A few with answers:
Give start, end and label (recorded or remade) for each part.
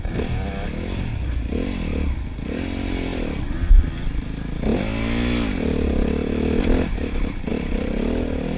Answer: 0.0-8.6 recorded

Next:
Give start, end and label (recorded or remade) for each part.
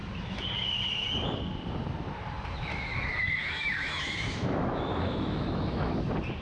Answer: 0.0-2.7 recorded; 2.7-5.9 remade; 5.9-6.4 recorded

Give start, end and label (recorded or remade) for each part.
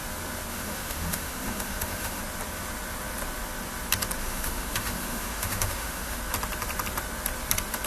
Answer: 0.0-0.5 recorded; 0.5-2.2 remade; 2.2-4.2 recorded; 4.2-6.2 remade; 6.2-7.9 recorded